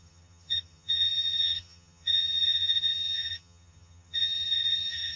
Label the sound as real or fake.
fake